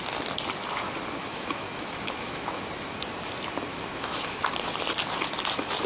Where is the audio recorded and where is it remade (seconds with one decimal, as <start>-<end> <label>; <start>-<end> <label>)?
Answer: 0.0-1.2 recorded; 1.2-2.6 remade; 2.6-3.7 recorded; 3.7-4.4 remade; 4.4-5.9 recorded